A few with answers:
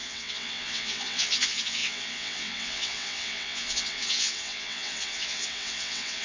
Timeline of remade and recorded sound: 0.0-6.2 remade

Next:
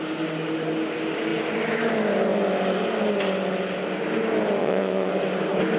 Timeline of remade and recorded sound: 0.0-4.6 recorded; 4.6-5.1 remade; 5.1-5.8 recorded

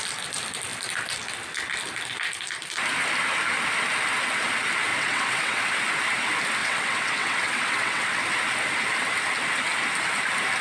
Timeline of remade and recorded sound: 0.0-4.9 recorded; 4.9-5.6 remade; 5.6-6.6 recorded; 6.6-8.2 remade; 8.2-10.6 recorded

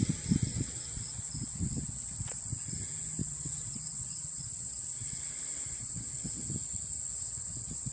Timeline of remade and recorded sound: 0.0-0.5 recorded; 0.5-2.4 remade; 2.4-3.2 recorded; 3.2-6.5 remade; 6.5-7.1 recorded; 7.1-7.9 remade

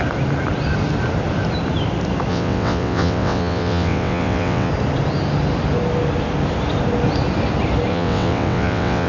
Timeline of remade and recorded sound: 0.0-2.3 recorded; 2.3-4.7 remade; 4.7-7.9 recorded; 7.9-9.1 remade